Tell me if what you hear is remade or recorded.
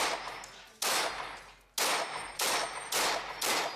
recorded